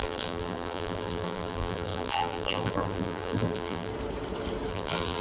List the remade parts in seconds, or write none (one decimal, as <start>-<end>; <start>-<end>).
0.0-3.9; 4.7-5.2

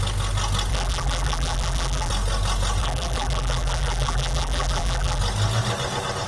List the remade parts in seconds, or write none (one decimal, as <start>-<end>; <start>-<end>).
0.7-2.1; 2.8-5.2

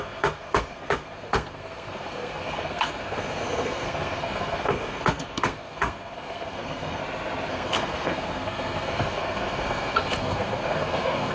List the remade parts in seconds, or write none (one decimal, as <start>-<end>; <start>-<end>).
0.0-7.0; 7.5-11.3

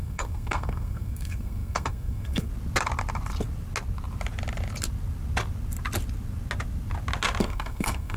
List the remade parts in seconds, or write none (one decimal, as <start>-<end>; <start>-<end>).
0.0-2.5; 7.4-8.2

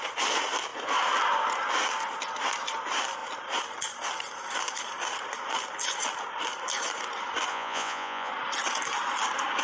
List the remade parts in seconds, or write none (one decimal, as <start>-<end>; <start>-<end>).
7.5-8.3

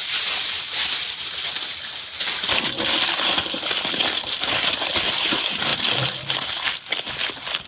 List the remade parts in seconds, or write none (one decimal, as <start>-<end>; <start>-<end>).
none

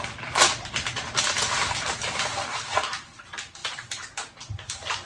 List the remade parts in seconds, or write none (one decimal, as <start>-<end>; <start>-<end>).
none